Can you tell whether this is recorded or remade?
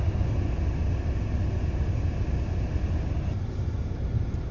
recorded